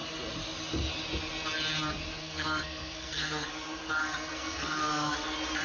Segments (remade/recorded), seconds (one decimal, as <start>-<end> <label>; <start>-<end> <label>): 0.0-2.2 recorded; 2.2-3.5 remade; 3.5-4.0 recorded; 4.0-5.1 remade; 5.1-5.6 recorded